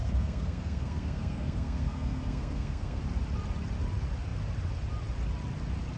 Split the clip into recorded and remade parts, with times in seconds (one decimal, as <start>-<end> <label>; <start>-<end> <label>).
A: 0.0-3.0 remade; 3.0-6.0 recorded